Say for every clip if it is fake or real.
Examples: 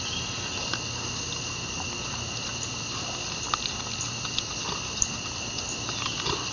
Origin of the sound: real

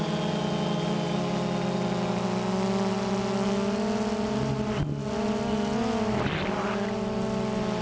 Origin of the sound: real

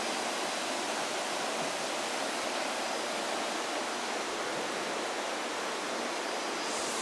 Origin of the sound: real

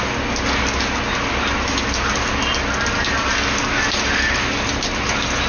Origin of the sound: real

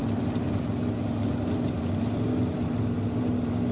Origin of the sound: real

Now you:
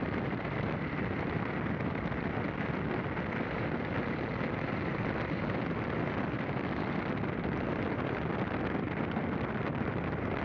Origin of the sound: real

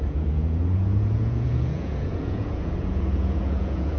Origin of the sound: fake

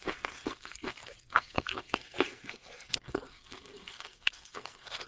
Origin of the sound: fake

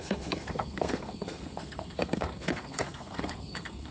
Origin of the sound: fake